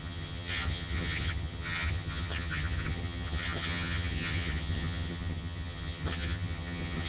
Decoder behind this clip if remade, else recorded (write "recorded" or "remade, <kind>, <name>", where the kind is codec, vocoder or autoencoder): remade, vocoder, HiFi-GAN